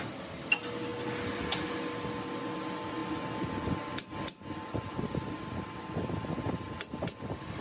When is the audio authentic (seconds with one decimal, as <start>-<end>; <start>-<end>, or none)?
0.0-7.6